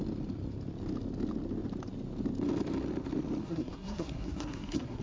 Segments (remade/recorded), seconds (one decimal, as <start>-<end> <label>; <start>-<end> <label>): 0.0-3.4 recorded; 3.4-5.0 remade